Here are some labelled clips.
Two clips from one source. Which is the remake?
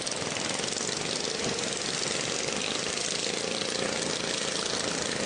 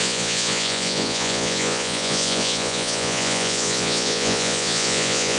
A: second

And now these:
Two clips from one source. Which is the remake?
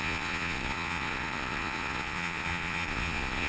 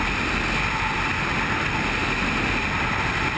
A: first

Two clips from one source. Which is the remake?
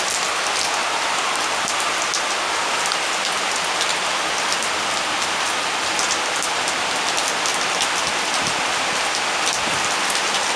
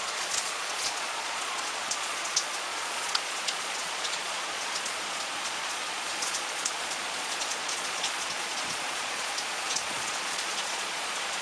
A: second